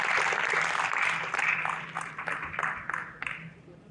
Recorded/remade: recorded